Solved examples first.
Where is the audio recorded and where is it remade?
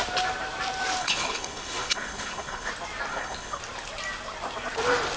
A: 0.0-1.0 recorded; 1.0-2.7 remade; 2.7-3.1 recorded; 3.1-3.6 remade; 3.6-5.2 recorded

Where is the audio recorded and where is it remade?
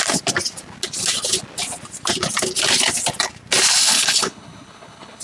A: 0.0-3.8 recorded; 3.8-5.2 remade